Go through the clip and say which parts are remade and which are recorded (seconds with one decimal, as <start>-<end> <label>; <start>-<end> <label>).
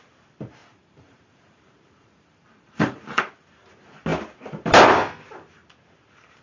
0.0-0.6 recorded; 0.6-3.2 remade; 3.2-6.4 recorded